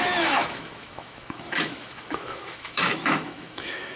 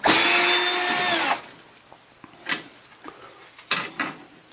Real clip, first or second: second